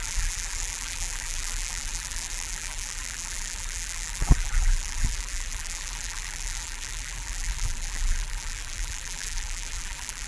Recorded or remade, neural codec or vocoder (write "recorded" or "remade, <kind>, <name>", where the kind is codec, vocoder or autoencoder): remade, vocoder, BigVGAN v2